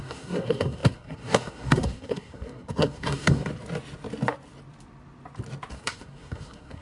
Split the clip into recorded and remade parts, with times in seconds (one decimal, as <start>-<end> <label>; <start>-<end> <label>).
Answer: 0.0-3.5 remade; 3.5-5.7 recorded; 5.7-6.8 remade

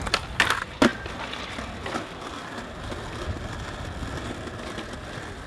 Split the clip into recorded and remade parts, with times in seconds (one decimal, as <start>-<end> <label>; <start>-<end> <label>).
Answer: 0.0-5.5 recorded

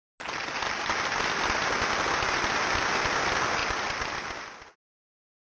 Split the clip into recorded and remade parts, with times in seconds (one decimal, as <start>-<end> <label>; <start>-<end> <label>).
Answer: 0.0-3.6 recorded; 3.6-4.3 remade; 4.3-5.5 recorded